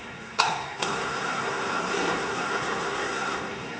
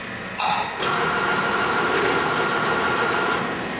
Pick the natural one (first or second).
second